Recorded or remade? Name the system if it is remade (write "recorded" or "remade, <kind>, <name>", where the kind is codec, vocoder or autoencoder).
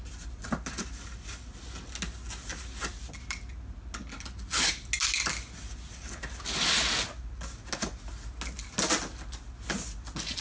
recorded